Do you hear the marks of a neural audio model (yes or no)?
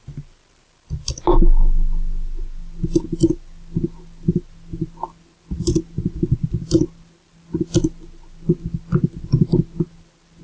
no